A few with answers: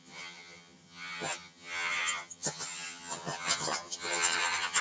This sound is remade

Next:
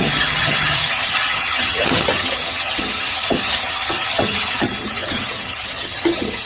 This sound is remade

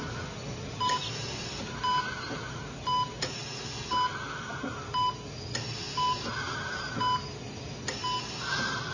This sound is recorded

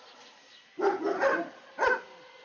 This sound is recorded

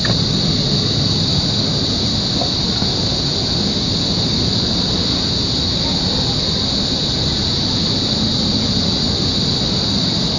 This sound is recorded